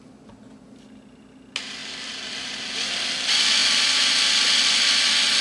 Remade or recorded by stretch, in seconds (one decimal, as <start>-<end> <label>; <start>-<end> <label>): 0.0-1.8 recorded; 1.8-2.3 remade; 2.3-3.6 recorded; 3.6-4.4 remade; 4.4-5.4 recorded